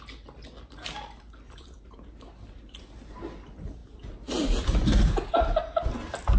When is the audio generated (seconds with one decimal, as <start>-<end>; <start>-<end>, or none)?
none

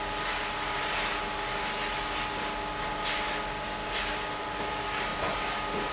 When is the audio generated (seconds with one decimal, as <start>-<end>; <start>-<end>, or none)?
none

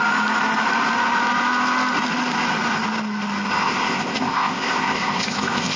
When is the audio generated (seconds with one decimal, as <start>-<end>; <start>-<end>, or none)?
3.6-5.8

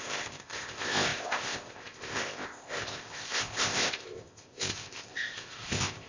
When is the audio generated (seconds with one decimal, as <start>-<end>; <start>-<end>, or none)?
0.0-6.1

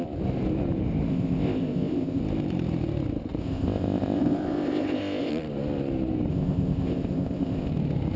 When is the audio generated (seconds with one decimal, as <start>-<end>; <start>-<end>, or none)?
1.1-2.2; 3.4-5.3; 6.3-7.7